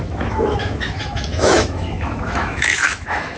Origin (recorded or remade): remade